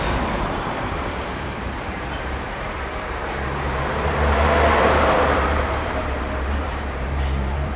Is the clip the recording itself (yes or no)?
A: no